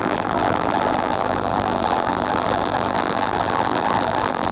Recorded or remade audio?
remade